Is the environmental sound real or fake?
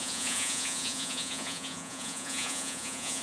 fake